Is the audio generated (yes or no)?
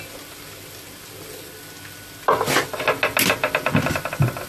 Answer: no